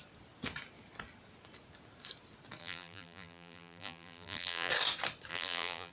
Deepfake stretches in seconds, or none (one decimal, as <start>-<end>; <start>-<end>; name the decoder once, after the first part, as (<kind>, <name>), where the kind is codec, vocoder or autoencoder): 2.6-4.7 (vocoder, BigVGAN v2); 5.3-5.9